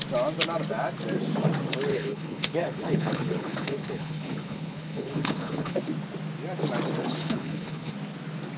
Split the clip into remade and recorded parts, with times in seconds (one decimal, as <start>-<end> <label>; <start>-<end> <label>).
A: 0.0-1.9 recorded; 1.9-5.8 remade; 5.8-7.2 recorded; 7.2-7.9 remade; 7.9-8.6 recorded